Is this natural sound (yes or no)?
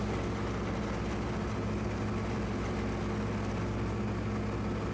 yes